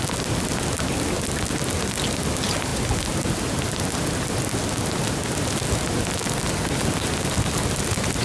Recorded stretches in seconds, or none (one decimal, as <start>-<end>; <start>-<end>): 0.0-8.2